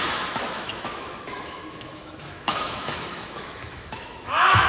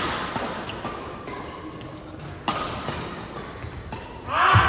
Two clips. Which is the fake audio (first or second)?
first